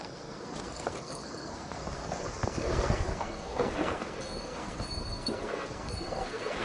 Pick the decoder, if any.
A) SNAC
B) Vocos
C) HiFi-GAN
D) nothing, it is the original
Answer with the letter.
A